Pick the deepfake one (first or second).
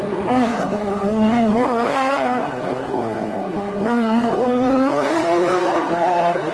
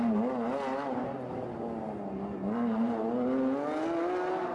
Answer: first